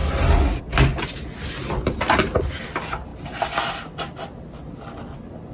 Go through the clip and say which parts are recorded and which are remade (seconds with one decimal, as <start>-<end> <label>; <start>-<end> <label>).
0.0-5.5 recorded